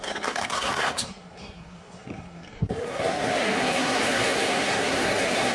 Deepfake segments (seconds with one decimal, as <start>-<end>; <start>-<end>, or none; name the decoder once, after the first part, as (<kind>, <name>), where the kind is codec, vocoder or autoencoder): 0.0-5.5 (codec, SNAC)